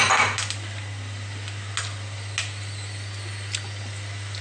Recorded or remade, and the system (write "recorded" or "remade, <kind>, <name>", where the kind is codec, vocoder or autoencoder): recorded